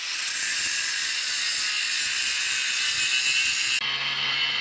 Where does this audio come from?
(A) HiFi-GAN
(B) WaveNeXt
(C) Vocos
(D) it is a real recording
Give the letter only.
D